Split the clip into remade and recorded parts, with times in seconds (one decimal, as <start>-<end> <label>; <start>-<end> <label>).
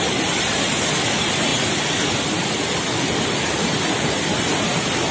0.0-5.1 recorded